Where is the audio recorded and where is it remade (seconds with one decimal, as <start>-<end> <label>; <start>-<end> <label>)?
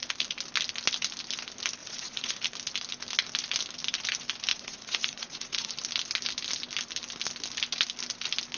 0.0-1.8 recorded; 1.8-2.4 remade; 2.4-4.5 recorded; 4.5-5.7 remade; 5.7-8.6 recorded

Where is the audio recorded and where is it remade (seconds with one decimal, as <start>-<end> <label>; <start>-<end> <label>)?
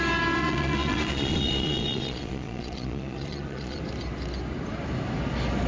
0.0-0.4 recorded; 0.4-3.8 remade; 3.8-5.7 recorded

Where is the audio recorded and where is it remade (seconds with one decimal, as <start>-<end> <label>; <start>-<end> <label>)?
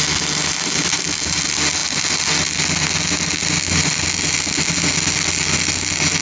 0.0-6.2 recorded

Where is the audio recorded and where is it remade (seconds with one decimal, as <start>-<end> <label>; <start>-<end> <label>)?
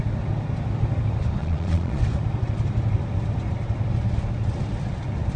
0.0-1.4 recorded; 1.4-2.0 remade; 2.0-5.4 recorded